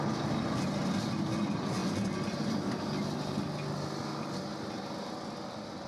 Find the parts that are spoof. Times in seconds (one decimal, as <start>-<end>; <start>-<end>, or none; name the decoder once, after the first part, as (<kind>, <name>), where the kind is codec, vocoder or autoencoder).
none